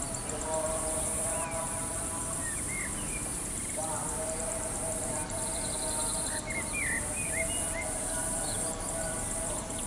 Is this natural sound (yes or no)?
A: no